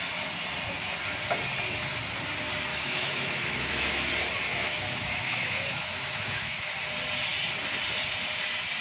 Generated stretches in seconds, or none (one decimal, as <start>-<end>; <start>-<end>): 2.7-4.1; 4.5-6.7

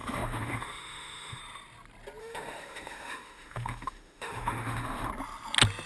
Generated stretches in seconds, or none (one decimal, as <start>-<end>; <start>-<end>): 0.0-1.4; 2.2-5.1

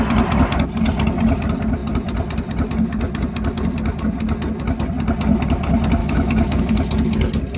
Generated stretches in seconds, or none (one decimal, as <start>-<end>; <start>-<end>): 6.0-6.6

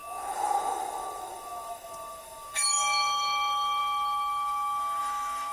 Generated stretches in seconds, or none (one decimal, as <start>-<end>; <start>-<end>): 0.0-5.5

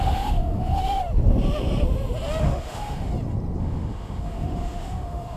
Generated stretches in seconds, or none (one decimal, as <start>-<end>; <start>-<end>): 0.0-1.0; 2.4-3.1; 3.6-5.4